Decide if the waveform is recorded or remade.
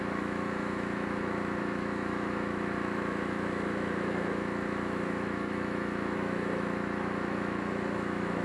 remade